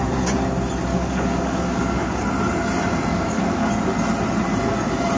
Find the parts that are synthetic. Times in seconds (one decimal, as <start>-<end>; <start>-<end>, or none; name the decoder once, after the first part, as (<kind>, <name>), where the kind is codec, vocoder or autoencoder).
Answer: 0.9-2.2 (codec, DAC); 3.1-3.7